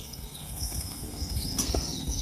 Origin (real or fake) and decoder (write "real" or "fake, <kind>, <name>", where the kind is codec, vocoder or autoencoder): fake, codec, SNAC